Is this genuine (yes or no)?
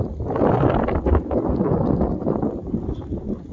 yes